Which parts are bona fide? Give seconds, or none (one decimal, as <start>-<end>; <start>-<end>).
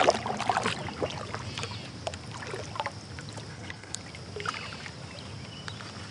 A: 0.0-3.5; 4.0-6.1